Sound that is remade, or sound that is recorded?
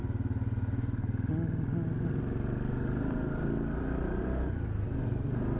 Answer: recorded